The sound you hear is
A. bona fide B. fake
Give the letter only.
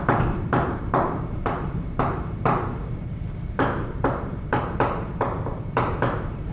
B